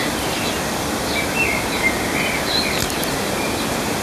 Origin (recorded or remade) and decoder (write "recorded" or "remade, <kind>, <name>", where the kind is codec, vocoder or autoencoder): recorded